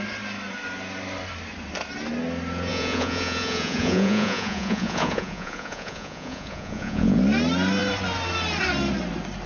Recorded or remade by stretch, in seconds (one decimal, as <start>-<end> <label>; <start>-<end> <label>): 0.0-2.7 recorded; 2.7-7.2 remade; 7.2-9.5 recorded